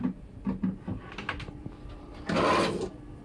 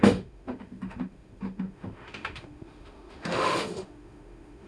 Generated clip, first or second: second